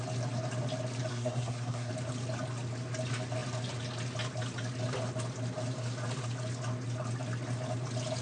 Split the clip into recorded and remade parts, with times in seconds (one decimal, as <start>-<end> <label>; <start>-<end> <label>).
0.0-1.1 recorded; 1.1-1.9 remade; 1.9-8.2 recorded